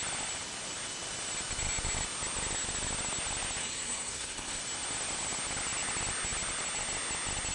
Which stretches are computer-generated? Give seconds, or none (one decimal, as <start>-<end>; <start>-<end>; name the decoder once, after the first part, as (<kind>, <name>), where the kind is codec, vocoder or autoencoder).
3.6-4.6 (codec, SNAC)